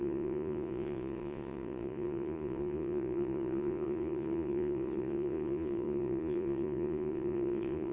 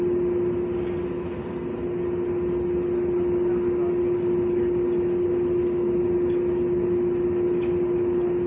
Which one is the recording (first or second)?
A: second